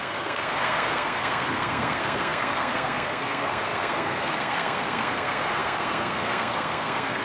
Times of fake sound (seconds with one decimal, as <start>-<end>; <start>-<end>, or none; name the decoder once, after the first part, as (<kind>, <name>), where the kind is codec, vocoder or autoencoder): 0.0-7.2 (codec, SNAC)